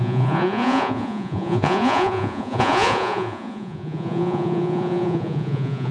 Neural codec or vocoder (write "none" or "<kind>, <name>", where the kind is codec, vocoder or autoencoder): vocoder, Vocos